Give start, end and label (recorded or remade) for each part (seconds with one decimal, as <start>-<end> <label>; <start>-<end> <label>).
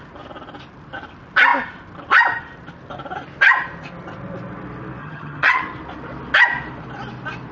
0.0-5.0 recorded; 5.0-5.6 remade; 5.6-7.5 recorded